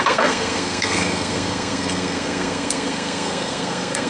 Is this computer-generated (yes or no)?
yes